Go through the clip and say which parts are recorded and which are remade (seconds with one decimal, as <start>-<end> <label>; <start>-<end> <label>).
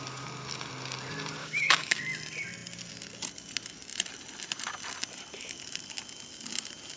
0.0-1.4 recorded; 1.4-2.0 remade; 2.0-7.0 recorded